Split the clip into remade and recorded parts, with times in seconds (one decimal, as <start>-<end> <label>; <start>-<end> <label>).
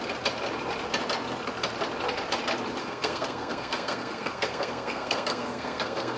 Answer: 0.0-2.8 recorded; 2.8-6.2 remade